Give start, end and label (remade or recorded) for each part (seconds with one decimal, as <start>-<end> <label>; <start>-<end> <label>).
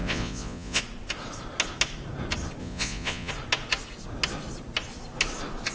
0.0-0.8 remade; 0.8-2.6 recorded; 2.6-3.3 remade; 3.3-5.7 recorded